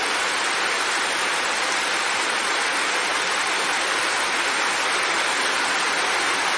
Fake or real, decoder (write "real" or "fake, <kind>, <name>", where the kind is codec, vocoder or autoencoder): real